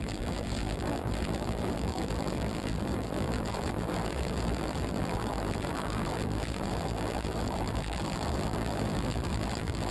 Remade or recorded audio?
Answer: remade